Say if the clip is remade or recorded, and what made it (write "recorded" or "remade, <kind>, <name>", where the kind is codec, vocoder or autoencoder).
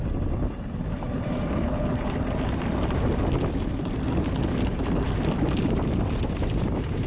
recorded